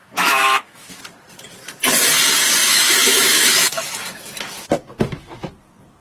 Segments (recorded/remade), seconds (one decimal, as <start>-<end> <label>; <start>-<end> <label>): 0.0-1.0 remade; 1.0-2.7 recorded; 2.7-4.3 remade; 4.3-6.0 recorded